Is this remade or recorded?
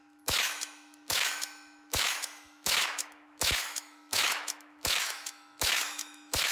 remade